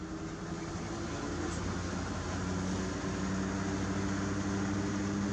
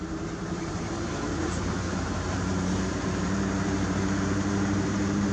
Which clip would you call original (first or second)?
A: first